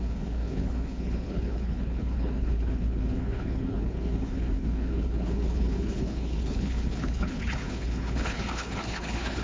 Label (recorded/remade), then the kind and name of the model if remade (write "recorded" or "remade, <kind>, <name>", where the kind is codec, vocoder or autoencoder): remade, codec, HILCodec